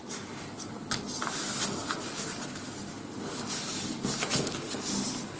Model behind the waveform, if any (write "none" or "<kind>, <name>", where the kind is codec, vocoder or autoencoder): none